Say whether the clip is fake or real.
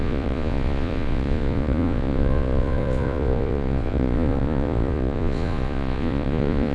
fake